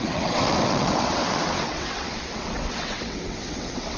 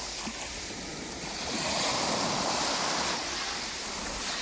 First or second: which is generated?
first